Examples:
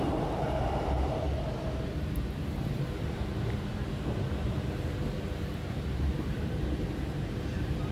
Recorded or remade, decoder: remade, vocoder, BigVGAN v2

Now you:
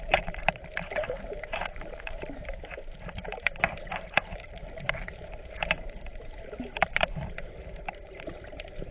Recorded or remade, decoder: remade, vocoder, BigVGAN v2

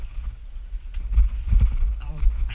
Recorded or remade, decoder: recorded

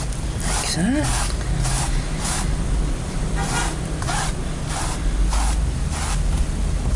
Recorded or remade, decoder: recorded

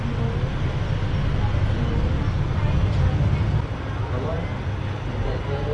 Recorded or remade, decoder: recorded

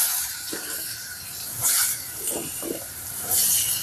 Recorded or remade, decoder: remade, vocoder, BigVGAN v2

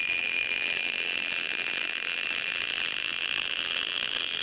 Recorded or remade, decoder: remade, vocoder, BigVGAN v2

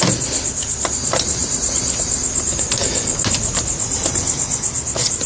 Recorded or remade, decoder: recorded